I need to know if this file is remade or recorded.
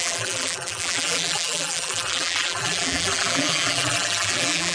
remade